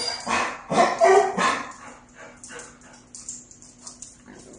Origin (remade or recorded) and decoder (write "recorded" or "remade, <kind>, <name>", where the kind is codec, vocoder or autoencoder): recorded